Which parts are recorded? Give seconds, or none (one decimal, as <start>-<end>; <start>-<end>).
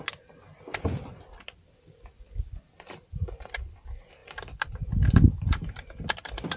0.0-6.6